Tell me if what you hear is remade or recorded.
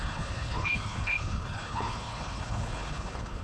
remade